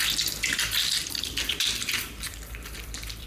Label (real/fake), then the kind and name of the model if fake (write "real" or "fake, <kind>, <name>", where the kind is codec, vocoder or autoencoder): fake, vocoder, BigVGAN v2